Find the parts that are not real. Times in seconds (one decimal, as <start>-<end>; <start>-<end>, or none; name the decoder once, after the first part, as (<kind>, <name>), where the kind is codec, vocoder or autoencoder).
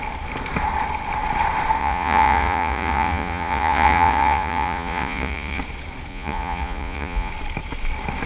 1.8-5.6 (vocoder, Vocos); 6.1-7.3